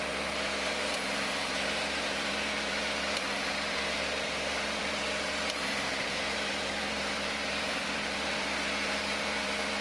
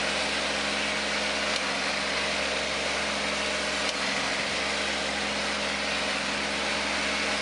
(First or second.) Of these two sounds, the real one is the second